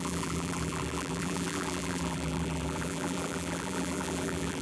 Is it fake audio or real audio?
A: fake